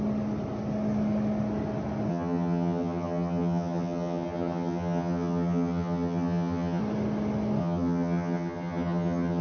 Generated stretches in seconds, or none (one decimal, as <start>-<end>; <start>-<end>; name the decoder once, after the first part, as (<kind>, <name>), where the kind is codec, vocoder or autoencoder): 2.1-6.8 (vocoder, HiFi-GAN); 7.6-9.4